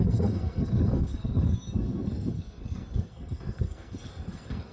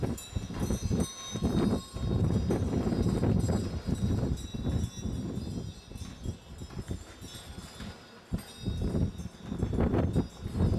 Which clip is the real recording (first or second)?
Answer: second